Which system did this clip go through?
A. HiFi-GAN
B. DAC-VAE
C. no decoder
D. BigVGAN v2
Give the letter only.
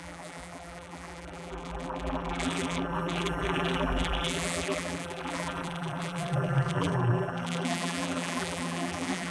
D